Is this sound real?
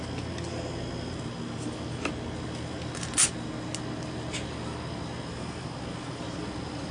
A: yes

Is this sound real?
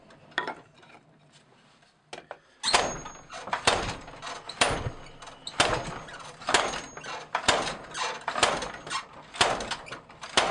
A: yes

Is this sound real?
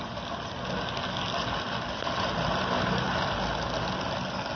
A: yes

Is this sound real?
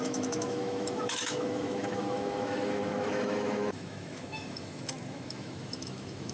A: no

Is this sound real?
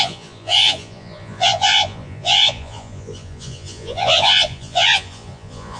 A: no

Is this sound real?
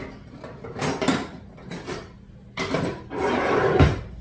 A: yes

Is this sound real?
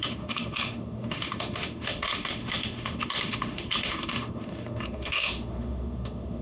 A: no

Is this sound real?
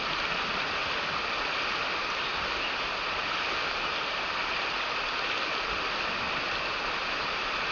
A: yes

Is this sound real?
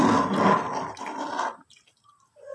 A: yes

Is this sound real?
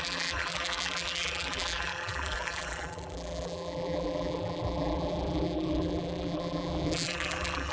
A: no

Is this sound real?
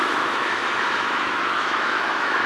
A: no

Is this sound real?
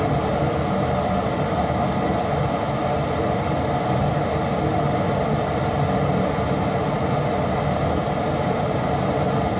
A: yes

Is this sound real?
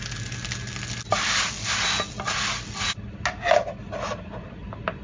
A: yes